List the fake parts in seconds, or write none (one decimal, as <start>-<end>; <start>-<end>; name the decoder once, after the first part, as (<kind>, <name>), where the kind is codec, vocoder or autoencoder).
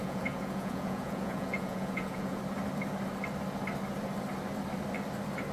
0.0-2.4 (vocoder, Vocos)